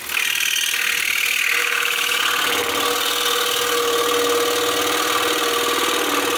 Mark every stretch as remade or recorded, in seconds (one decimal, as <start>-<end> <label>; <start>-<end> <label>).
0.0-1.6 recorded; 1.6-2.2 remade; 2.2-6.4 recorded